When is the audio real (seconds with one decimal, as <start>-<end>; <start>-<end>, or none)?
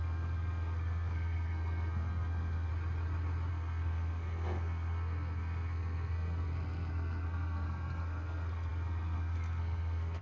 2.7-3.5